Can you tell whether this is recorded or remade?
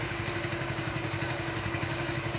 remade